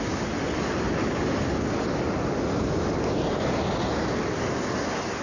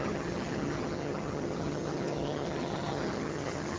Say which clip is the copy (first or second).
second